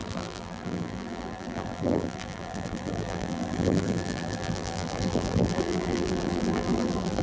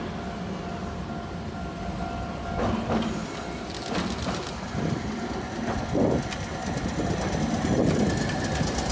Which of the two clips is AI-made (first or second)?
first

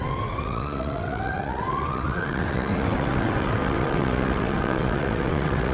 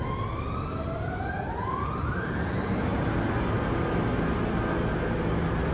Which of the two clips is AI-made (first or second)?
first